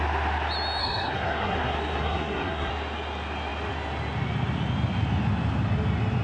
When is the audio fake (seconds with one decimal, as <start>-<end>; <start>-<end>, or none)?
0.8-2.7